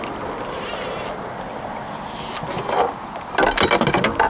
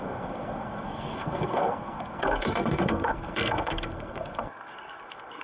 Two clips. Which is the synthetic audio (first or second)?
second